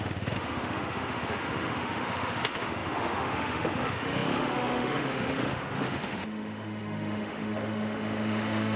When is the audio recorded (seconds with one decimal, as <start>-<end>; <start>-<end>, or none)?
none